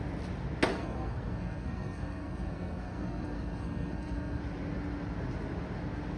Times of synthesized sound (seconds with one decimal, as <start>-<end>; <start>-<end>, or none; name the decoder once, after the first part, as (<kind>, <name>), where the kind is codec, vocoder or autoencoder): 0.7-4.4 (codec, SNAC)